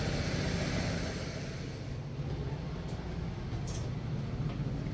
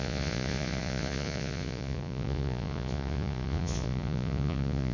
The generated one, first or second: second